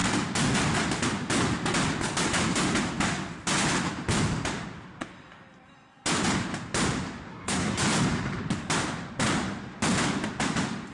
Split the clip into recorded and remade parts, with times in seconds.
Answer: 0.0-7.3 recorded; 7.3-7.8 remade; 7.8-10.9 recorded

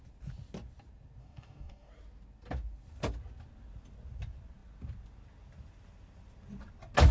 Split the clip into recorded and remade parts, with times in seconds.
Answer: 0.0-1.2 recorded; 1.2-1.9 remade; 1.9-7.1 recorded